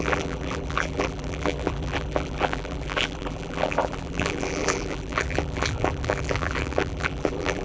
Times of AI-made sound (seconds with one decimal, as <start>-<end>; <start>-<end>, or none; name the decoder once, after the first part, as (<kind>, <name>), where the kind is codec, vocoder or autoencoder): 0.0-7.6 (vocoder, BigVGAN v2)